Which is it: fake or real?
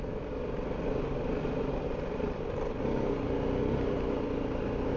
real